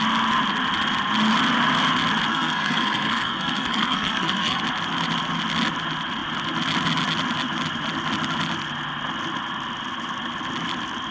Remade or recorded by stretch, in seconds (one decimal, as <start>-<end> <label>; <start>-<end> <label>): 0.0-2.3 recorded; 2.3-4.6 remade; 4.6-11.1 recorded